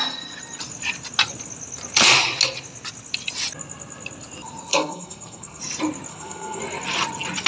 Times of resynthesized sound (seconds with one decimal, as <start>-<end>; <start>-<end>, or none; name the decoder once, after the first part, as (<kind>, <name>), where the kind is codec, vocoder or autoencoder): 4.7-5.6 (codec, SNAC); 6.1-6.6